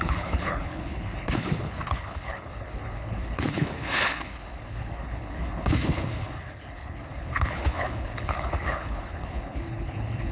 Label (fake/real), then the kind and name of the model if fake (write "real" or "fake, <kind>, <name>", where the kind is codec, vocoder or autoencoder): fake, codec, HILCodec